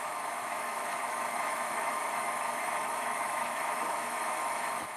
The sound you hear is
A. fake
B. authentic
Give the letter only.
A